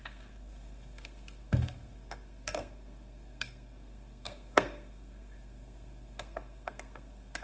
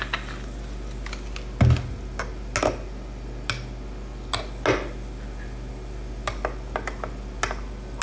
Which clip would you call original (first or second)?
second